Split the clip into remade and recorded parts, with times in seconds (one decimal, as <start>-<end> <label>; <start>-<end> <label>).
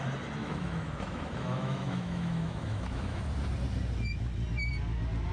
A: 0.0-0.4 recorded; 0.4-3.2 remade; 3.2-5.3 recorded